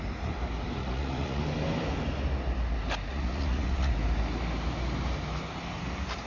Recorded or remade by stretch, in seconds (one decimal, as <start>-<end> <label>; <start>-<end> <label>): 0.0-0.8 recorded; 0.8-1.4 remade; 1.4-3.1 recorded; 3.1-3.9 remade; 3.9-6.3 recorded